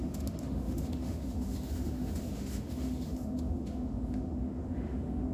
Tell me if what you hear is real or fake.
fake